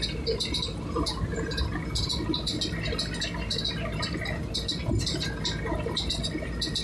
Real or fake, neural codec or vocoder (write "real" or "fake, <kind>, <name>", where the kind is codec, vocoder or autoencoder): real